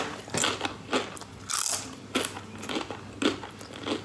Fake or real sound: real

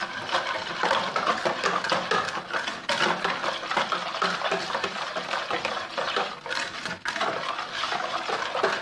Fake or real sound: real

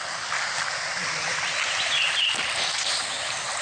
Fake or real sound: real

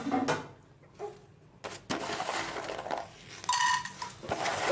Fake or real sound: real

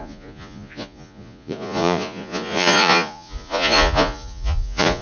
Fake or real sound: fake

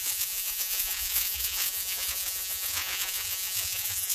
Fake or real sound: fake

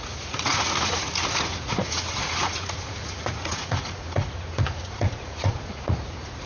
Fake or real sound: fake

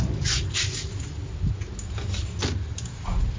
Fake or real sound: real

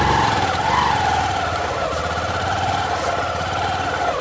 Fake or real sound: real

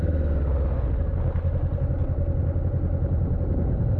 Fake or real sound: real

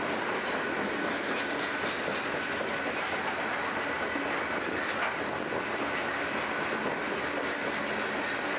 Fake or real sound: real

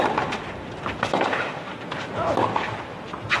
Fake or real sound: real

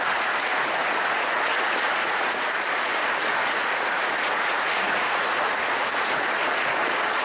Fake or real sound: fake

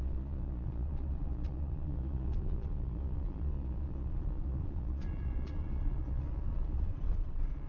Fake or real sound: fake